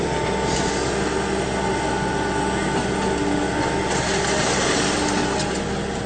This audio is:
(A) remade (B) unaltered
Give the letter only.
B